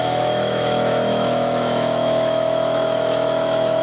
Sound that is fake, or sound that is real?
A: fake